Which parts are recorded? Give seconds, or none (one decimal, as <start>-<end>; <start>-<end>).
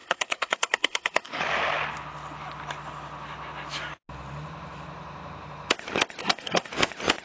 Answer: 1.4-6.2; 6.7-7.2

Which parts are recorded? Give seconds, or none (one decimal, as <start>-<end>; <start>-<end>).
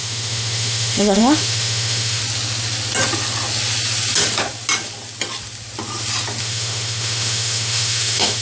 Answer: 2.2-6.4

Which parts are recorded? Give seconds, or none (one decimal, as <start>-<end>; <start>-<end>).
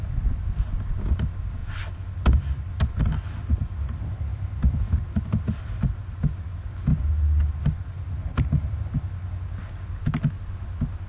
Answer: 0.0-11.1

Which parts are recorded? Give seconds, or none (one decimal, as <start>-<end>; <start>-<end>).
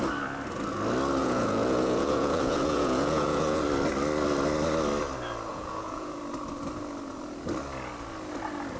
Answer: 0.0-1.2; 3.6-5.5; 6.2-8.8